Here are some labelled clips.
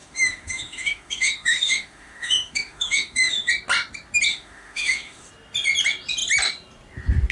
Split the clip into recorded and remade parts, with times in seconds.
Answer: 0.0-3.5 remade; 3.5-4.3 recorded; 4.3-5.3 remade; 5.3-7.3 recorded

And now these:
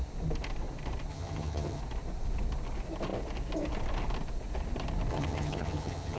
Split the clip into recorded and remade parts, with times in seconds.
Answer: 0.0-1.1 recorded; 1.1-1.8 remade; 1.8-5.1 recorded; 5.1-6.2 remade

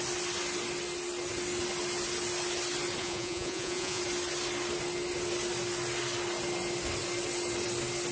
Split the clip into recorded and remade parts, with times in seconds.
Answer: 0.0-3.0 recorded; 3.0-4.0 remade; 4.0-8.1 recorded

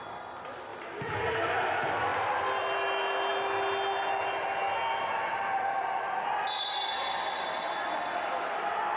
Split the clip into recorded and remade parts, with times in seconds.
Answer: 0.0-9.0 recorded

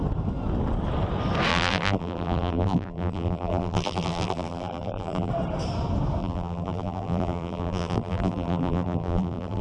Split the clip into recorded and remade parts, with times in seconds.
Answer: 0.0-1.5 recorded; 1.5-5.3 remade; 5.3-6.2 recorded; 6.2-9.6 remade

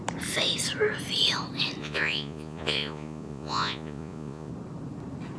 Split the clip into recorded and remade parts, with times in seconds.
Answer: 0.0-1.8 recorded; 1.8-4.5 remade; 4.5-5.4 recorded